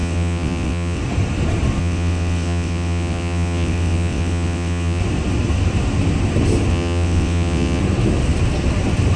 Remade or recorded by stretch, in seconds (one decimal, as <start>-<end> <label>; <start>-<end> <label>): 0.0-1.0 remade; 1.0-1.8 recorded; 1.8-5.0 remade; 5.0-6.7 recorded; 6.7-7.8 remade; 7.8-9.2 recorded